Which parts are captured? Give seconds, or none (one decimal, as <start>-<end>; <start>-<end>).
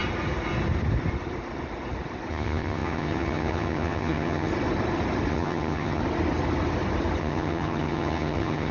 0.0-2.3; 4.5-5.3; 6.0-7.2